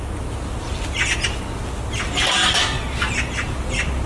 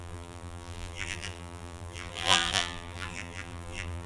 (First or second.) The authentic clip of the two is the first